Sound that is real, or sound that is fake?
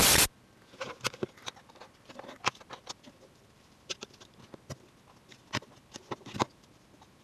real